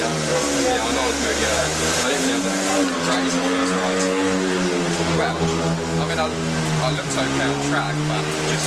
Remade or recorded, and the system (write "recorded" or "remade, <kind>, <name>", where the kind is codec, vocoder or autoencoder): recorded